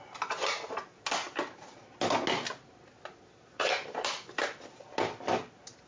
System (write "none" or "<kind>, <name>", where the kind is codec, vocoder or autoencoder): none